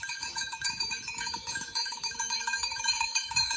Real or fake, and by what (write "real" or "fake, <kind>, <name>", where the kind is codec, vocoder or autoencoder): fake, autoencoder, DAC-VAE